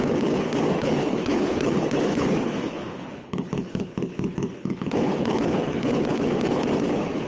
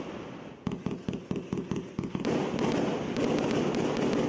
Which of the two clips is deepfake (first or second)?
first